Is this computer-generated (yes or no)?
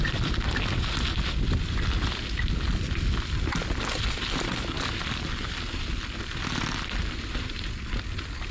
no